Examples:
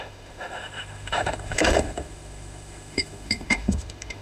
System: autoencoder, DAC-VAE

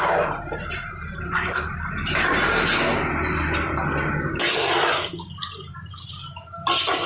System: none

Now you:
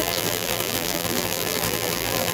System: vocoder, BigVGAN v2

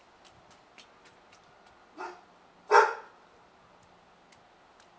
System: none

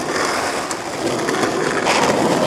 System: none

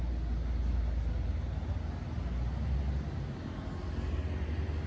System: none